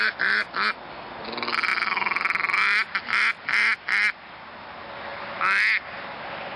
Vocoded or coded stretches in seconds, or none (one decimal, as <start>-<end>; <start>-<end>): none